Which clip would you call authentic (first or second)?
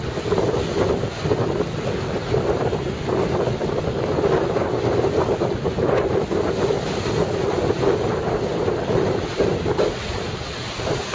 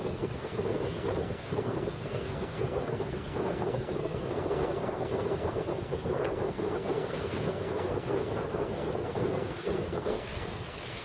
first